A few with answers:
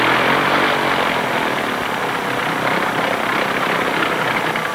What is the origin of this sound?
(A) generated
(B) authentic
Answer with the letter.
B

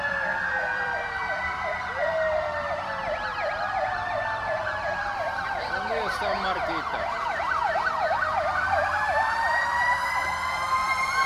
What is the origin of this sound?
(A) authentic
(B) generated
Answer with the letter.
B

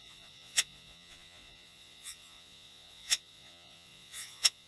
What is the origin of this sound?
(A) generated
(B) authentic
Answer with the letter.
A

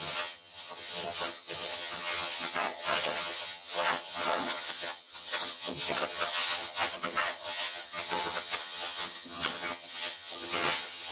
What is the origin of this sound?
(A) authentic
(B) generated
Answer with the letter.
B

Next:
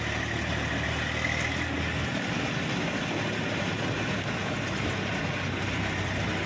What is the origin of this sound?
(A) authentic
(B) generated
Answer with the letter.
A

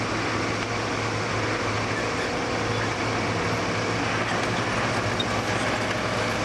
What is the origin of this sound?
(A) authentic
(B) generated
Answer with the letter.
A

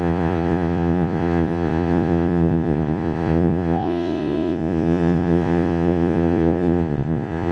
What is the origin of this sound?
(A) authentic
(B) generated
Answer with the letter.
B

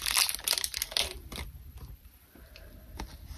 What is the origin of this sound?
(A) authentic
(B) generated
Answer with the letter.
B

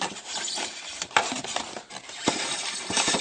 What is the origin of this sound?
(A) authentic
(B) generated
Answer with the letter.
B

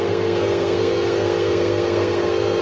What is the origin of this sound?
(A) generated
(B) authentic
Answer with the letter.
A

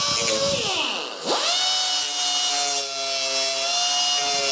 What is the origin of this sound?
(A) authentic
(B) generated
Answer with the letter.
A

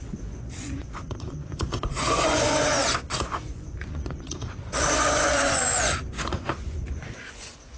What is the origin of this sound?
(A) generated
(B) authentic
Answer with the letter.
A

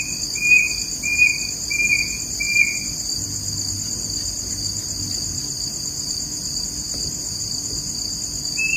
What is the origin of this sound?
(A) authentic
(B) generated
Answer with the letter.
A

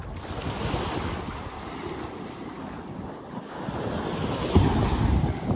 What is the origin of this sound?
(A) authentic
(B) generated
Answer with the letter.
A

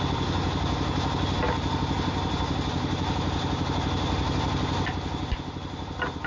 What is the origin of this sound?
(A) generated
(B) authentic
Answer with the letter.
B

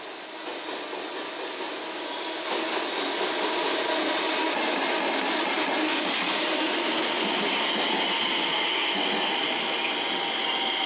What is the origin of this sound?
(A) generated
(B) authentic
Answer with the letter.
B